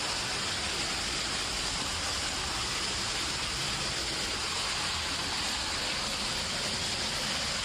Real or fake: real